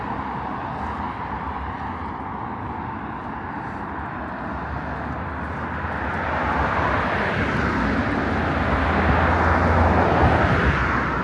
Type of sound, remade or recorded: recorded